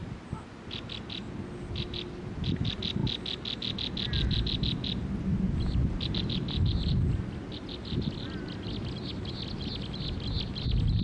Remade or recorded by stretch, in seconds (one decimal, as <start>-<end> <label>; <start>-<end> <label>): 0.0-11.0 recorded